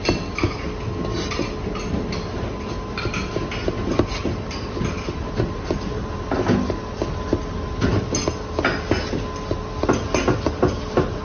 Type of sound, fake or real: real